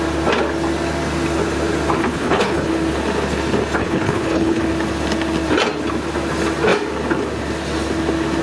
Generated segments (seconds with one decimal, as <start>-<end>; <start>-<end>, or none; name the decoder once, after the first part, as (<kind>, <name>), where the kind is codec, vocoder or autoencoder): 2.0-2.7 (codec, HILCodec); 3.8-4.6